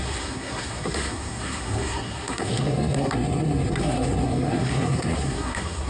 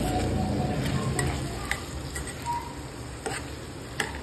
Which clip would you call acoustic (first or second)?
second